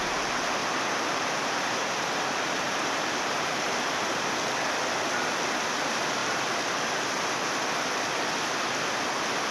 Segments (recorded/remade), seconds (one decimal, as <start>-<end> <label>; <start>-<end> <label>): 0.0-0.6 recorded; 0.6-4.3 remade; 4.3-9.5 recorded